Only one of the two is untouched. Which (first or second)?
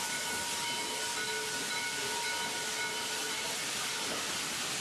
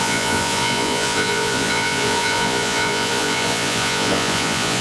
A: first